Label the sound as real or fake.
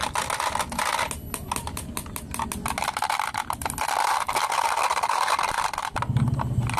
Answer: real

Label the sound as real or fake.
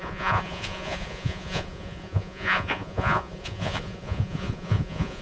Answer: fake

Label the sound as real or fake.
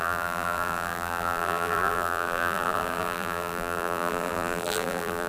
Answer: fake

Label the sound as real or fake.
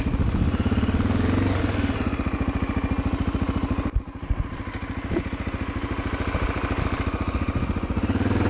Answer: real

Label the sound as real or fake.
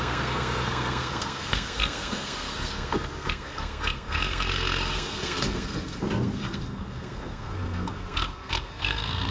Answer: fake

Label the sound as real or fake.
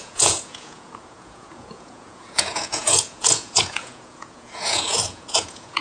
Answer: fake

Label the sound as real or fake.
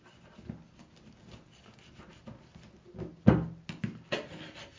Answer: real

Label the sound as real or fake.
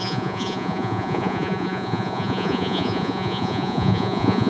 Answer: fake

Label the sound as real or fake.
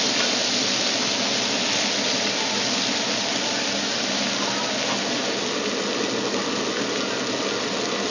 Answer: real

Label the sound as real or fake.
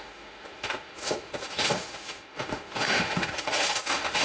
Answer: fake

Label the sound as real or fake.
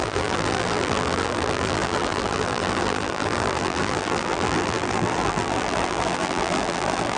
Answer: fake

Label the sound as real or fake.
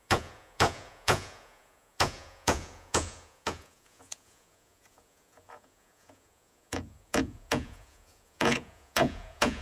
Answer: fake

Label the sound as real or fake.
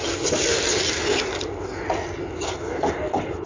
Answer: real